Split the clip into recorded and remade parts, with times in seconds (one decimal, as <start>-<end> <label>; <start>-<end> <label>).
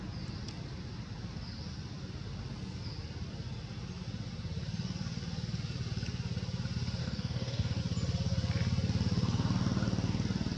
0.0-7.0 recorded; 7.0-7.8 remade; 7.8-10.6 recorded